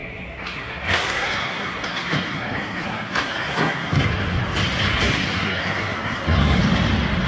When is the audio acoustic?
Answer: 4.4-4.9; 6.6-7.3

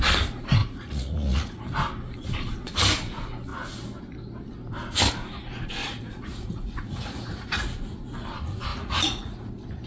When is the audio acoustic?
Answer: 0.0-0.6; 1.6-5.8; 7.8-8.7; 9.5-9.9